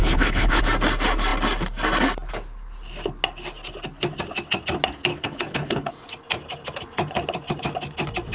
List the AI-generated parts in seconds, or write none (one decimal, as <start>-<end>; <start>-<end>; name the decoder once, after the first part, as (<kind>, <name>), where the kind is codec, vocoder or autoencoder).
0.0-0.6 (codec, HILCodec); 5.1-5.9